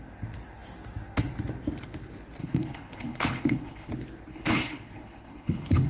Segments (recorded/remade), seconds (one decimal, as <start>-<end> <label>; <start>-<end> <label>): 0.0-2.4 recorded; 2.4-3.9 remade; 3.9-4.3 recorded; 4.3-5.9 remade